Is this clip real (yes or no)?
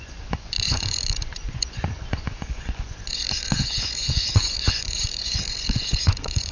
no